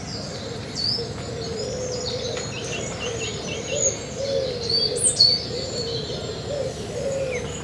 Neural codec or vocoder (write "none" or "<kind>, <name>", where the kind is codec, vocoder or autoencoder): none